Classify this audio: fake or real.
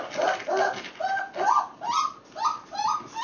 real